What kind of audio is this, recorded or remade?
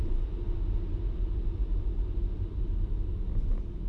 recorded